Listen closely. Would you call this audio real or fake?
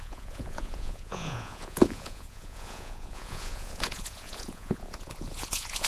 fake